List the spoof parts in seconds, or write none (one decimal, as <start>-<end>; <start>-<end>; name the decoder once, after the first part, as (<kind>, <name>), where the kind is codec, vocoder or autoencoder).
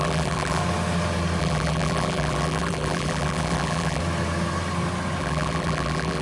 0.0-0.6 (vocoder, BigVGAN v2); 1.4-4.0; 5.2-6.2